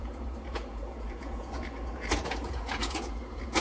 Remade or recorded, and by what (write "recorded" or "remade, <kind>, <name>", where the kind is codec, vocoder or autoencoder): remade, vocoder, Vocos